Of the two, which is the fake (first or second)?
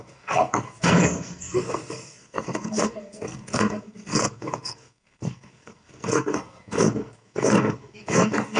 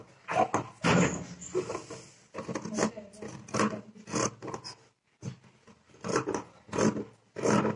first